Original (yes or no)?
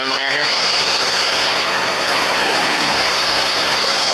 no